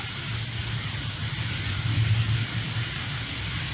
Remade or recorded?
recorded